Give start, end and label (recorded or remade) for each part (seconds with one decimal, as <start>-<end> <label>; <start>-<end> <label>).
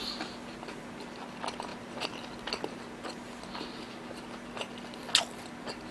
0.0-5.9 recorded